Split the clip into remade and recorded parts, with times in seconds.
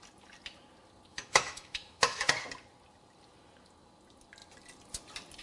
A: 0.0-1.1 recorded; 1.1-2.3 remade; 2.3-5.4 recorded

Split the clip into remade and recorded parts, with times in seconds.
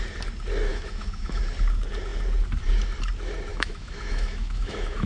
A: 0.0-0.7 recorded; 0.7-1.4 remade; 1.4-3.5 recorded; 3.5-5.1 remade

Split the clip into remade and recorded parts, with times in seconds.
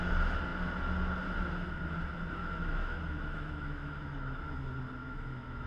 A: 0.0-2.4 recorded; 2.4-4.4 remade; 4.4-5.0 recorded; 5.0-5.7 remade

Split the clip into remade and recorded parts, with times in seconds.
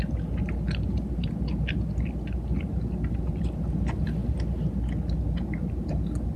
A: 0.0-6.4 recorded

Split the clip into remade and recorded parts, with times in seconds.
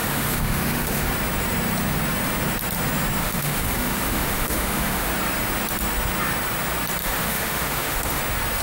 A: 0.0-1.1 remade; 1.1-3.2 recorded; 3.2-5.1 remade; 5.1-7.0 recorded; 7.0-8.2 remade; 8.2-8.6 recorded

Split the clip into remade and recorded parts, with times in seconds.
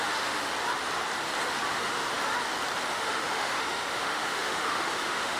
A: 0.0-0.5 remade; 0.5-1.7 recorded; 1.7-2.1 remade; 2.1-2.9 recorded; 2.9-5.4 remade